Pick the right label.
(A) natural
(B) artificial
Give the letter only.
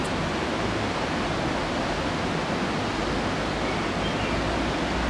A